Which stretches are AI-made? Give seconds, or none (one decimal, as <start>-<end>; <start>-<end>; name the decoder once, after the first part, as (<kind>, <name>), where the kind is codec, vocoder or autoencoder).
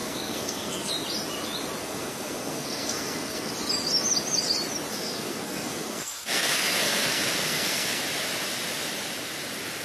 0.0-0.9 (codec, SNAC); 1.8-3.5; 4.9-8.0